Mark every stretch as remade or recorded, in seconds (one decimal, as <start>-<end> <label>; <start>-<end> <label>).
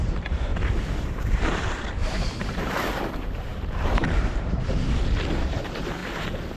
0.0-0.5 remade; 0.5-1.0 recorded; 1.0-6.0 remade; 6.0-6.6 recorded